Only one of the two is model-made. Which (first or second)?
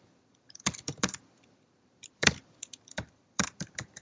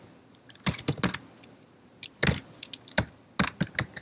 first